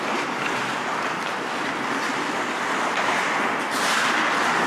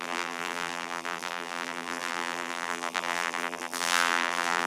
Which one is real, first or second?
first